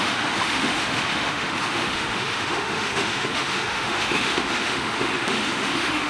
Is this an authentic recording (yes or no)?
no